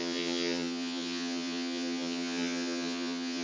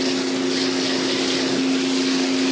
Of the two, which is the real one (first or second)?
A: second